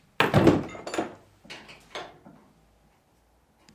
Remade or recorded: recorded